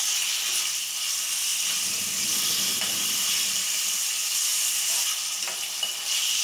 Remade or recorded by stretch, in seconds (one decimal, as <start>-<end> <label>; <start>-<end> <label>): 0.0-6.4 recorded